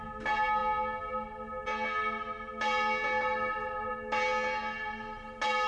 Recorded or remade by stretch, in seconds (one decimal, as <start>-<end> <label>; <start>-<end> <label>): 0.0-5.7 recorded